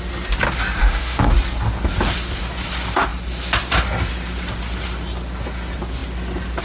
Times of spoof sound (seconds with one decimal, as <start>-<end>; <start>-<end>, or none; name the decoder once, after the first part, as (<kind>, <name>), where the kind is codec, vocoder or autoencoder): 0.8-1.3 (autoencoder, DAC-VAE)